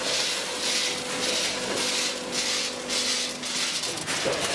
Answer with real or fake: real